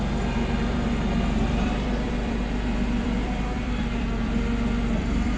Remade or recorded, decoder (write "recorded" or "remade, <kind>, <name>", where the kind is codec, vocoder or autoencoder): remade, vocoder, BigVGAN v2